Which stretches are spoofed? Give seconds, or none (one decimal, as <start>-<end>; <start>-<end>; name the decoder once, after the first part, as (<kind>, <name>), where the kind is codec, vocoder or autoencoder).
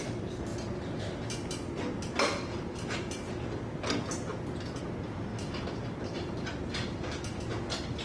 none